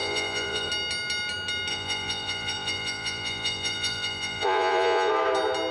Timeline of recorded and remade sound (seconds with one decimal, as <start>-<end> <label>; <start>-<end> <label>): 0.0-0.7 remade; 0.7-1.7 recorded; 1.7-5.1 remade; 5.1-5.7 recorded